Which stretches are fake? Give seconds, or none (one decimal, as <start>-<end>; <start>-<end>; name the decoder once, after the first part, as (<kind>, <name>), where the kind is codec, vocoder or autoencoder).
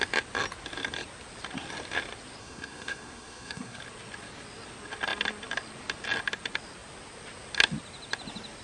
2.4-3.8 (codec, SNAC)